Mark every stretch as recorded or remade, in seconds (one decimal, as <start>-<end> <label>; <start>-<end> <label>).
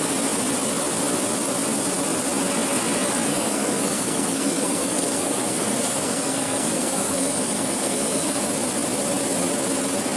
0.0-3.3 recorded; 3.3-8.4 remade; 8.4-10.2 recorded